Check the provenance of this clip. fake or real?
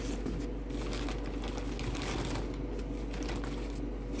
real